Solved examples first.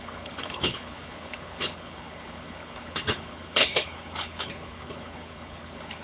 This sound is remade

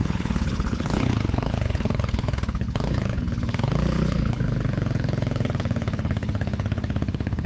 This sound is remade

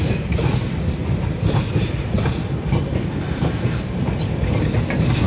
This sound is recorded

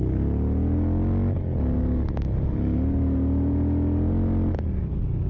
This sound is recorded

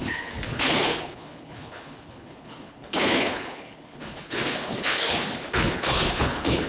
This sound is remade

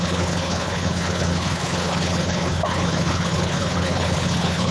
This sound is remade